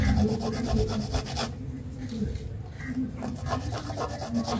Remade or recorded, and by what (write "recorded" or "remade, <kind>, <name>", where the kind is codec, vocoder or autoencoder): recorded